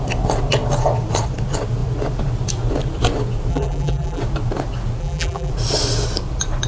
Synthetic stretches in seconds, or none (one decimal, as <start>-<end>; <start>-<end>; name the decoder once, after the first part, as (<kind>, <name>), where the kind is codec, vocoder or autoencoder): 3.5-4.2 (vocoder, BigVGAN v2); 5.0-5.5